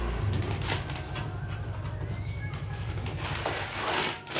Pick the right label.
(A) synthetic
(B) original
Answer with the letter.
B